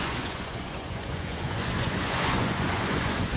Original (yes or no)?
no